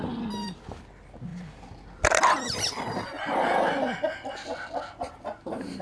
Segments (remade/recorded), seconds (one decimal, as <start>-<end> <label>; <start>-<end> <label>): 0.0-1.3 recorded; 1.3-3.1 remade; 3.1-5.8 recorded

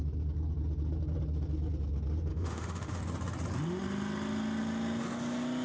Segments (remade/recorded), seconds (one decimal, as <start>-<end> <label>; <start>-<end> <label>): 0.0-2.3 recorded; 2.3-3.0 remade; 3.0-5.6 recorded

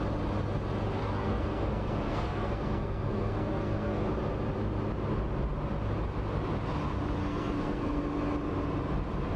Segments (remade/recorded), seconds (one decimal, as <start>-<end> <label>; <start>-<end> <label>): 0.0-1.0 recorded; 1.0-4.1 remade; 4.1-7.2 recorded; 7.2-8.0 remade; 8.0-9.4 recorded

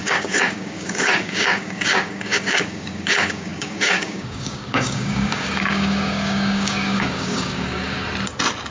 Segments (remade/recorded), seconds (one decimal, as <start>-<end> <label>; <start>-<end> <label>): 0.0-8.0 remade; 8.0-8.7 recorded

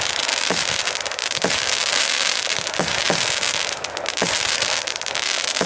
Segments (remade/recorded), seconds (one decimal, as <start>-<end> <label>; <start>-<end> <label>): 0.0-5.7 recorded

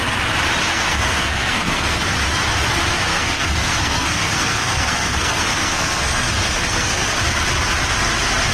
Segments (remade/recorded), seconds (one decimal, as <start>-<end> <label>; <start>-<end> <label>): 0.0-0.7 recorded; 0.7-2.0 remade; 2.0-3.1 recorded; 3.1-7.2 remade; 7.2-8.5 recorded

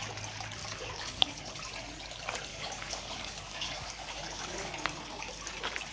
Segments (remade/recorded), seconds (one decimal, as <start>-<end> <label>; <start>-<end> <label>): 0.0-0.6 recorded; 0.6-1.4 remade; 1.4-2.5 recorded; 2.5-5.3 remade; 5.3-5.9 recorded

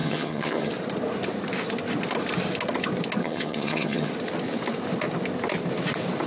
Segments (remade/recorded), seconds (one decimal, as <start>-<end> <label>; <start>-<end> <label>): 0.0-0.7 remade; 0.7-3.2 recorded; 3.2-4.1 remade; 4.1-6.3 recorded